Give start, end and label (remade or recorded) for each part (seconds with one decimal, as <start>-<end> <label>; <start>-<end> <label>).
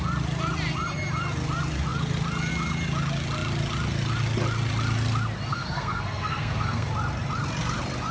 0.0-5.5 recorded; 5.5-6.9 remade; 6.9-8.1 recorded